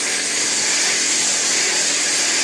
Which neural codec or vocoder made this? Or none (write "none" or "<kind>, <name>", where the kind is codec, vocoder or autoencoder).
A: none